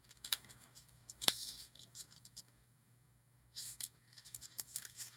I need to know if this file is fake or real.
fake